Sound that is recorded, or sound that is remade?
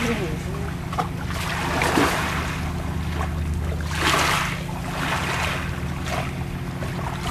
recorded